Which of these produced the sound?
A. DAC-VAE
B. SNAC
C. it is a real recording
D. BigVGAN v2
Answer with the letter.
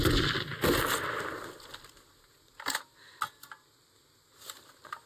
C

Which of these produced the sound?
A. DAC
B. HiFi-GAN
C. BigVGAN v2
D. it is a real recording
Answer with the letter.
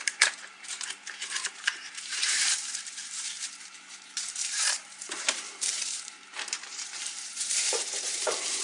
C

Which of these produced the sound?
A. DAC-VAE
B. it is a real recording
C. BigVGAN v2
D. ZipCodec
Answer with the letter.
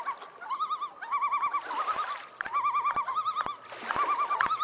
B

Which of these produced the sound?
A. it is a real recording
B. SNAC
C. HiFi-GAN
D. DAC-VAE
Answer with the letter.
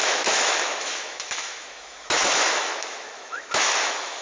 D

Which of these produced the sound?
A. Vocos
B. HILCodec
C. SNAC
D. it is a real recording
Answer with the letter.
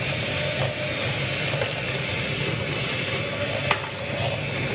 D